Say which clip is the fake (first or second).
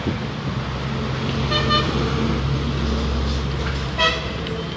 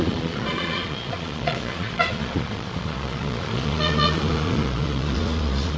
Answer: second